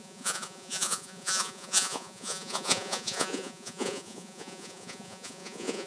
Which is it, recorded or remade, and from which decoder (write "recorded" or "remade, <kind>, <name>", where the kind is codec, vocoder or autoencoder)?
remade, vocoder, Vocos